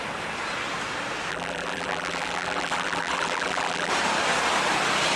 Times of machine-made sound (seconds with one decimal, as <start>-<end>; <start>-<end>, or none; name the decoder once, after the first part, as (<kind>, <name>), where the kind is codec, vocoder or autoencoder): 1.3-3.9 (vocoder, BigVGAN v2)